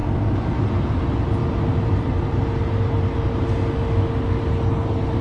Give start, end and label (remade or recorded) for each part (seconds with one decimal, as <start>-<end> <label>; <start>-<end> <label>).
0.0-5.2 recorded